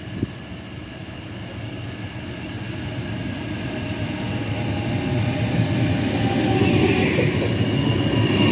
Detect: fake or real real